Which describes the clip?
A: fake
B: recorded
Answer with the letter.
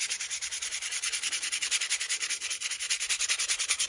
B